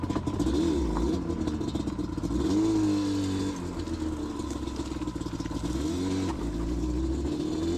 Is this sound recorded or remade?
recorded